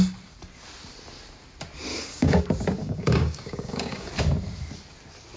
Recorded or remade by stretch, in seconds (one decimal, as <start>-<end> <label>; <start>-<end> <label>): 0.0-1.9 recorded; 1.9-2.4 remade; 2.4-2.8 recorded; 2.8-4.1 remade; 4.1-5.4 recorded